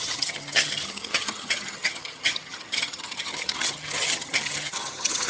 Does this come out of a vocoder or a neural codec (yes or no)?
yes